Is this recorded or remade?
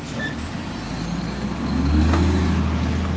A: recorded